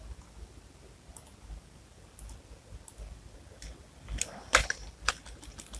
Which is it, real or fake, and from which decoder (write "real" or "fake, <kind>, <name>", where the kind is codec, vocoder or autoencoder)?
real